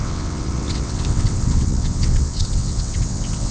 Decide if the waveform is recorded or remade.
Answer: remade